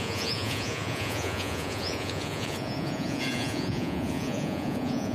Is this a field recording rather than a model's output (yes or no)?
no